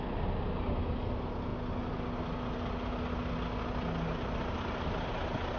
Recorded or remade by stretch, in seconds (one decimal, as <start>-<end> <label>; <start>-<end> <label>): 0.0-5.6 recorded